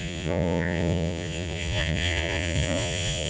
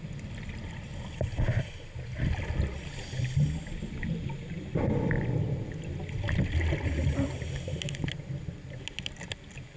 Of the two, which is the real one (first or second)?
second